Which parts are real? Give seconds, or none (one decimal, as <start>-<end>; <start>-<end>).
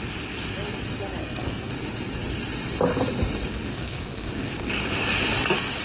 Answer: 0.0-1.2; 1.7-3.7; 4.3-5.8